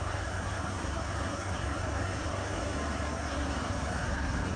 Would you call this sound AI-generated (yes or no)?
yes